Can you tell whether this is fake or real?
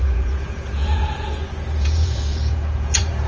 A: fake